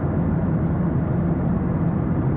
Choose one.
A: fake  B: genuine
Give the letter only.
A